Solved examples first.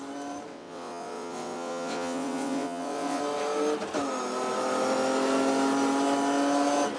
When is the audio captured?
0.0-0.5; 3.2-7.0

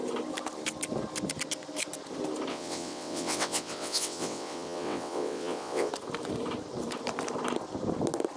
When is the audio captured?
0.0-2.5; 5.9-8.4

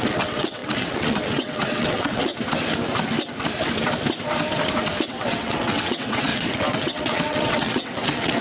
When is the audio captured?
2.3-5.1